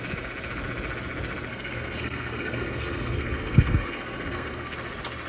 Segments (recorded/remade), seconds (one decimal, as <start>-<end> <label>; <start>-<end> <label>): 0.0-1.5 recorded; 1.5-4.7 remade; 4.7-5.3 recorded